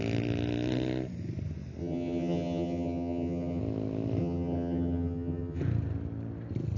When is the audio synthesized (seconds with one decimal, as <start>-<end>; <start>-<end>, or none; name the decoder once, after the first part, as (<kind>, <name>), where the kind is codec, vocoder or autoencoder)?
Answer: 1.8-3.6 (vocoder, HiFi-GAN); 4.2-5.6